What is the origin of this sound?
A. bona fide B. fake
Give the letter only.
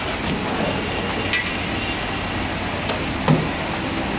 A